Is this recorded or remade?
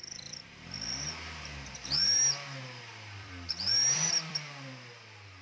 remade